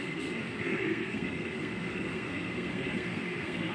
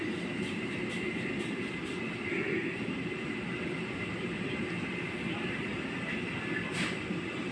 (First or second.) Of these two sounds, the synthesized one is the first